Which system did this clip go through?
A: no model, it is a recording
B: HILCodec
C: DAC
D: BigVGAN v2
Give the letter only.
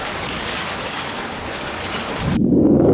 C